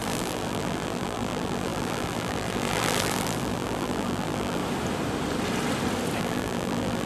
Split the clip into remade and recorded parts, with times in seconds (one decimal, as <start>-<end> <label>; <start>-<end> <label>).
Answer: 0.0-4.6 remade; 4.6-6.2 recorded; 6.2-7.1 remade

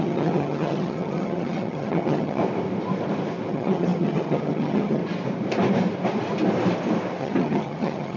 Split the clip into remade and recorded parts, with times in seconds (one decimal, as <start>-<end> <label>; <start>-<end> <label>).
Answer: 0.0-2.4 remade; 2.4-3.5 recorded; 3.5-5.0 remade; 5.0-7.2 recorded; 7.2-8.2 remade